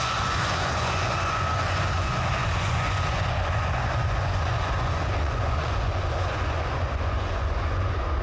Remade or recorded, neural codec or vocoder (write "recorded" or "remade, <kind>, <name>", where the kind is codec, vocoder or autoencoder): remade, vocoder, Vocos